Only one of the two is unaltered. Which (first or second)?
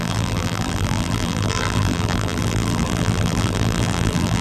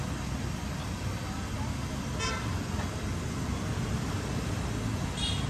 second